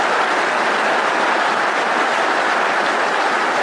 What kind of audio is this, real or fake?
real